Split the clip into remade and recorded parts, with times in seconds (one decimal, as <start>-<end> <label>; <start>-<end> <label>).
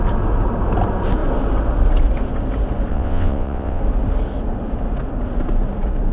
0.0-2.9 recorded; 2.9-3.8 remade; 3.8-6.1 recorded